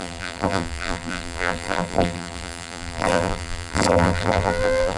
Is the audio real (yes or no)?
no